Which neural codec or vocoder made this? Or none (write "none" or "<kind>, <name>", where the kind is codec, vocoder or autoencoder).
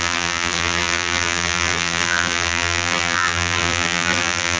vocoder, BigVGAN v2